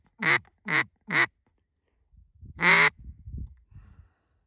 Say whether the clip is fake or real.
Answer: real